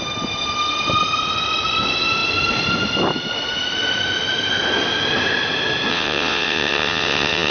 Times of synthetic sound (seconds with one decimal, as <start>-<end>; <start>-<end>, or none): 5.9-7.5